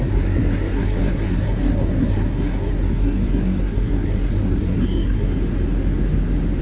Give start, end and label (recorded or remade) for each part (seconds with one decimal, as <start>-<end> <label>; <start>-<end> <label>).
0.0-5.3 remade; 5.3-6.6 recorded